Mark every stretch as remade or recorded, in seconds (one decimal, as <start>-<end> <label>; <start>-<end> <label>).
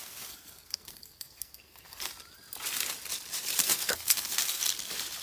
0.0-2.1 remade; 2.1-3.6 recorded; 3.6-4.6 remade; 4.6-5.2 recorded